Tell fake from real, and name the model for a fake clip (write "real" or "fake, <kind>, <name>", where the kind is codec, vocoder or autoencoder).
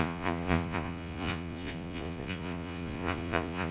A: fake, vocoder, Vocos